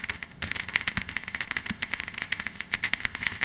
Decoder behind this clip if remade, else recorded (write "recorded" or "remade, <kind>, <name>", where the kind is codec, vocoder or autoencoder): remade, codec, ZipCodec